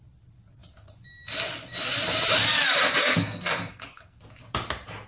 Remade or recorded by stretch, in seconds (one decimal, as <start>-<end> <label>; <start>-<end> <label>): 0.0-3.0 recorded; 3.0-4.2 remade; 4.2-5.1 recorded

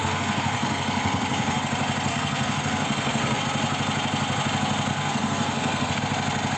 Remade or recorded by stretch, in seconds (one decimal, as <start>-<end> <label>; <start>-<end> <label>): 0.0-1.6 remade; 1.6-2.1 recorded; 2.1-3.4 remade; 3.4-4.9 recorded; 4.9-6.0 remade; 6.0-6.6 recorded

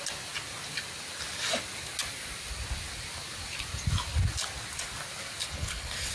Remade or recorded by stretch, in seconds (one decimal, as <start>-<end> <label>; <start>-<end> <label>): 0.0-5.4 recorded; 5.4-6.1 remade

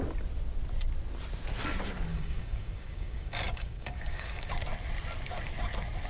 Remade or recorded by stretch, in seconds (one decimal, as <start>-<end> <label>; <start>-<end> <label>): 0.0-2.1 recorded; 2.1-4.5 remade; 4.5-6.1 recorded

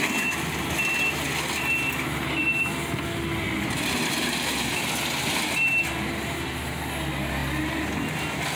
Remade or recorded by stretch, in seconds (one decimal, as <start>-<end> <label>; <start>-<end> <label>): 0.0-8.6 recorded

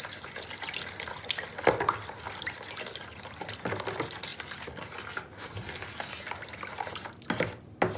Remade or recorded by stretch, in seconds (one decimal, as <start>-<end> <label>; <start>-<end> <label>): 0.0-8.0 recorded

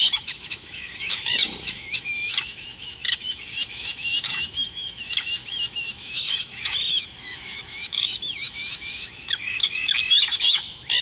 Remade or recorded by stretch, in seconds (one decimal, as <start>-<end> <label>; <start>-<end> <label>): 0.0-11.0 remade

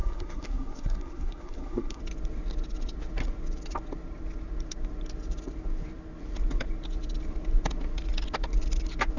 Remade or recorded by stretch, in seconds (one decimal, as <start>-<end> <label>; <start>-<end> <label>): 0.0-2.0 remade; 2.0-9.2 recorded